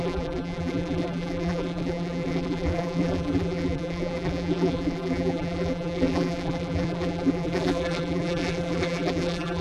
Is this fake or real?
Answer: fake